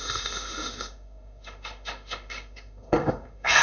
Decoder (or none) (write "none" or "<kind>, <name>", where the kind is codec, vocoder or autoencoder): autoencoder, DAC-VAE